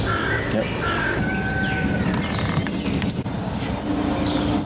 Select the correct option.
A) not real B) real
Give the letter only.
B